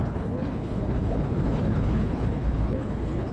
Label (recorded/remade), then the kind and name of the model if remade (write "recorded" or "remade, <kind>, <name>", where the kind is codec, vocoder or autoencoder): remade, codec, HILCodec